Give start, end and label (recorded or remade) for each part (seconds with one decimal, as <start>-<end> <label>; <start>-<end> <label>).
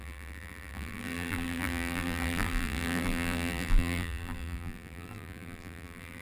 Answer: 0.0-6.2 remade